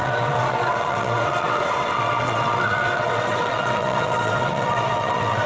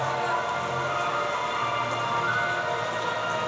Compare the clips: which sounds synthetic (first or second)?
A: first